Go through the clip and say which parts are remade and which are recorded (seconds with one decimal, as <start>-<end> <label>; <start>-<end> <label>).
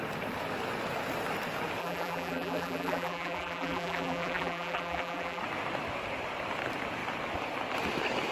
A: 0.0-1.8 recorded; 1.8-5.4 remade; 5.4-8.3 recorded